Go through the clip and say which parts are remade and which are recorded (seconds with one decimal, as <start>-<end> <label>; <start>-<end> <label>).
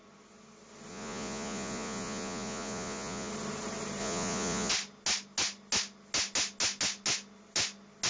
0.0-0.9 recorded; 0.9-3.3 remade; 3.3-4.0 recorded; 4.0-4.7 remade; 4.7-8.1 recorded